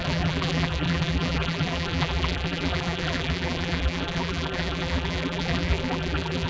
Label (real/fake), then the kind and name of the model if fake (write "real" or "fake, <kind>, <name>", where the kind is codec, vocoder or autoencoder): fake, vocoder, BigVGAN v2